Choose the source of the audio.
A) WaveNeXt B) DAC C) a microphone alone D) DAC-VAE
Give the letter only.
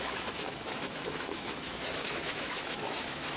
D